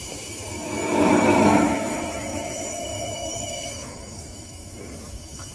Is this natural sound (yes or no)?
no